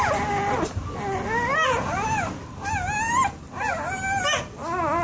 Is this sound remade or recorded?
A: recorded